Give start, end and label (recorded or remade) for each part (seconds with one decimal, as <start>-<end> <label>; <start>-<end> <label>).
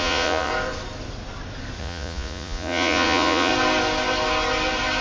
0.0-0.5 remade; 0.5-1.8 recorded; 1.8-3.5 remade; 3.5-5.0 recorded